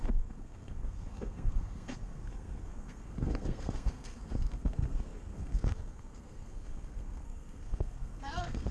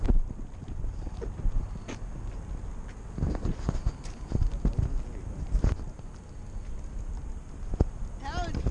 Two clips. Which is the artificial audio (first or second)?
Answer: first